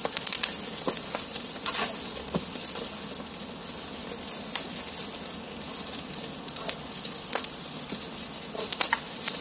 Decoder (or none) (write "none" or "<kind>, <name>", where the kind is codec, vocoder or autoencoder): none